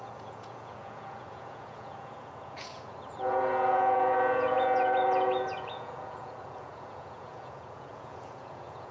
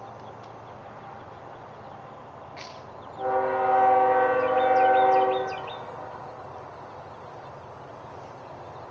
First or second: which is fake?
first